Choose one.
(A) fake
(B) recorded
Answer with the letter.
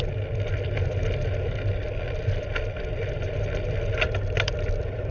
B